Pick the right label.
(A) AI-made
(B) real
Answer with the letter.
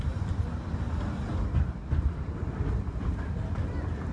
B